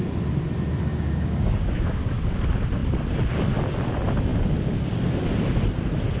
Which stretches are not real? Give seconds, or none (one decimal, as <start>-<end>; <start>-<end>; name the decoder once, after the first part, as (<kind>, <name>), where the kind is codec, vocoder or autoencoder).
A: 0.9-2.0 (codec, DAC)